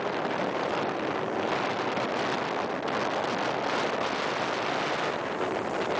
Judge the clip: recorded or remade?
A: recorded